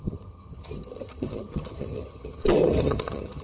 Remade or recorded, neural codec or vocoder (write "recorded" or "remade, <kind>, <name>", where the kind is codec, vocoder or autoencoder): remade, vocoder, HiFi-GAN